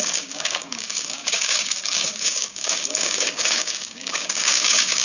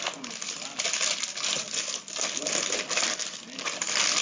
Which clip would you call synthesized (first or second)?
first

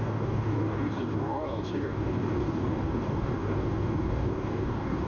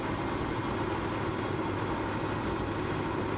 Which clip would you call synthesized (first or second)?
first